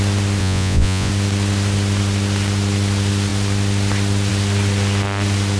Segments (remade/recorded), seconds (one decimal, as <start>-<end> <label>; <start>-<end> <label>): 0.0-0.4 recorded; 0.4-1.1 remade; 1.1-5.6 recorded